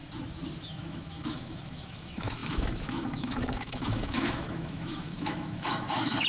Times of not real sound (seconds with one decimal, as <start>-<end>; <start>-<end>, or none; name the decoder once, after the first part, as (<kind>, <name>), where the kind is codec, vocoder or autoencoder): 0.6-6.3 (autoencoder, DAC-VAE)

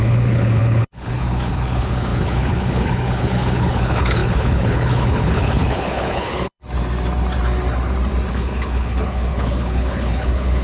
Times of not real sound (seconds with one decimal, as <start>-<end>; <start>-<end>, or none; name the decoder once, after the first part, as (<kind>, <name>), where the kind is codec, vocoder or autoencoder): 0.0-6.6 (codec, HILCodec); 8.3-10.6